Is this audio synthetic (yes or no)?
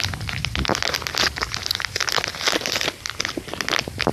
no